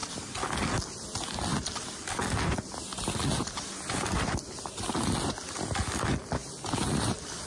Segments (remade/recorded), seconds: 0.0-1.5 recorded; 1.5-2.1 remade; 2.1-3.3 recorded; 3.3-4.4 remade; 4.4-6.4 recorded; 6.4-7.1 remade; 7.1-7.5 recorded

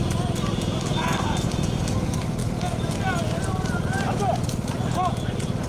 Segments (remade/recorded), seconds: 0.0-5.7 recorded